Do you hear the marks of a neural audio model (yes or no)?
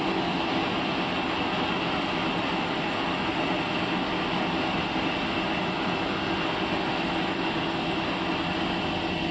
no